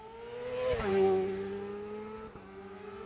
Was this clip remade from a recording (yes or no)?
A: no